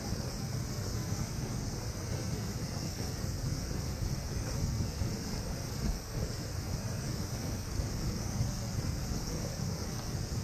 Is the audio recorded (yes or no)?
no